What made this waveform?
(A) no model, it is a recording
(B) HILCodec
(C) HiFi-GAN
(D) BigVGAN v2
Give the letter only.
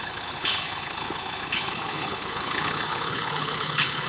B